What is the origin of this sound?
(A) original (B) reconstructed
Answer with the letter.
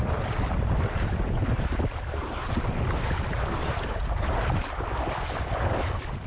B